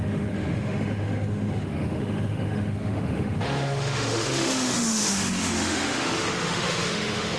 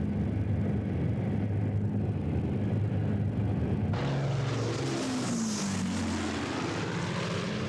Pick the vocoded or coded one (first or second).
first